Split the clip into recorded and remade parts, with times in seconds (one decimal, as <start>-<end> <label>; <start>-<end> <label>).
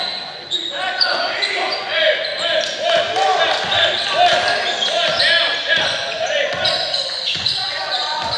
0.0-2.3 remade; 2.3-5.7 recorded; 5.7-8.4 remade